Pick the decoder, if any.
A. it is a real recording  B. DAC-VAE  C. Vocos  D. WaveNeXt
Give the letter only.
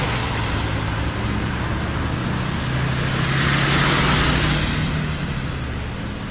A